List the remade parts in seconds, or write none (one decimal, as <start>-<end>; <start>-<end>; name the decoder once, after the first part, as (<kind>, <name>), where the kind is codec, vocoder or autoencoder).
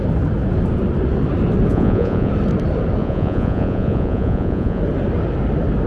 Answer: 1.7-2.3 (vocoder, Vocos); 3.0-4.8